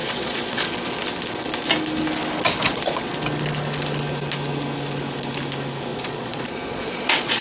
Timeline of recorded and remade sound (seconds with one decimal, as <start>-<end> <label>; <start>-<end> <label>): 0.0-0.6 remade; 0.6-2.6 recorded; 2.6-3.1 remade; 3.1-5.9 recorded; 5.9-7.4 remade